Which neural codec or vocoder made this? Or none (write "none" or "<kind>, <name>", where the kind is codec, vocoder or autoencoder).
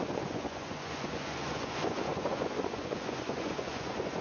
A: vocoder, Vocos